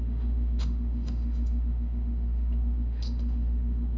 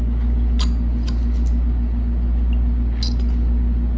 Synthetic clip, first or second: first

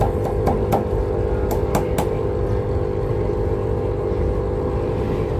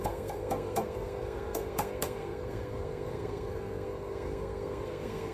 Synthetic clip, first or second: second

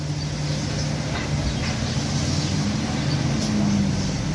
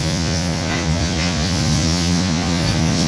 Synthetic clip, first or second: second